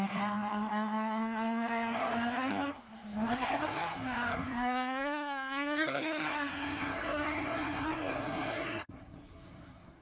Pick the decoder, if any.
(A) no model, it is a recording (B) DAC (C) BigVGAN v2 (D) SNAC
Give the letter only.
D